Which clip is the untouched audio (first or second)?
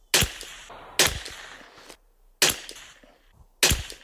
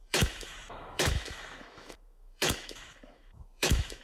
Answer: first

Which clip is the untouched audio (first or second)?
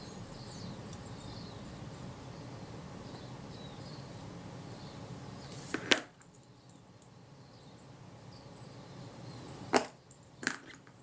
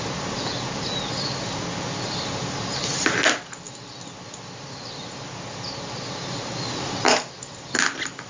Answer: second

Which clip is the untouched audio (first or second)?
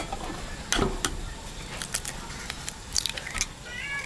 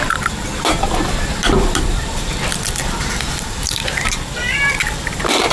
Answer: first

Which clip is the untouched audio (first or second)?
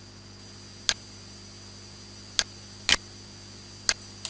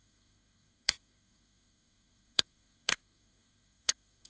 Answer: first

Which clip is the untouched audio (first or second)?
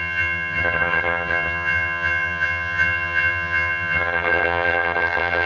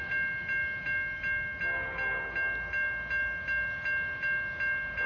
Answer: second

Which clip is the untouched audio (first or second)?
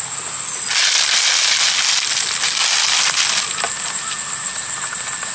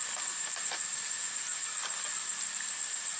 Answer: first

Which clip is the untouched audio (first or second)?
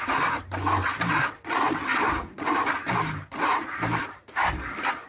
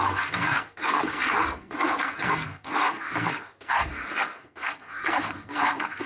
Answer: first